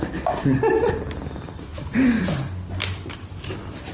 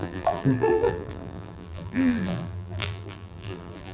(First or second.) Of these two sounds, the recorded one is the first